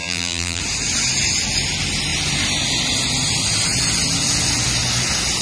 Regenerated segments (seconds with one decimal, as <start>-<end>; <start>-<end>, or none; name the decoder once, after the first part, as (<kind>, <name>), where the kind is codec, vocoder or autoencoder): 0.0-0.6 (vocoder, BigVGAN v2)